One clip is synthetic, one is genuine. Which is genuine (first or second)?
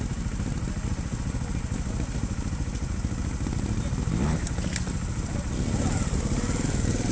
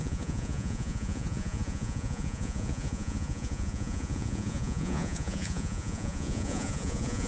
first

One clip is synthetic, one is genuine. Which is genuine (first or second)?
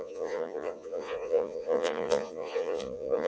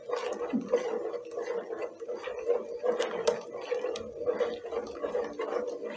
second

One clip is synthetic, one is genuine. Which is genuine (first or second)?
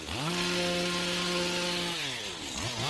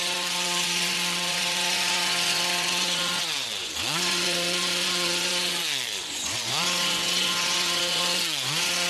first